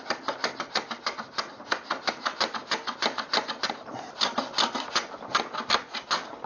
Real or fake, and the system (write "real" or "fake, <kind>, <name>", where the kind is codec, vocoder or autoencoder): real